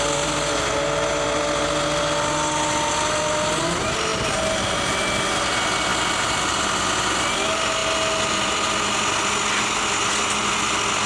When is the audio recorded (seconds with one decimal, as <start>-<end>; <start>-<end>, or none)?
0.0-11.1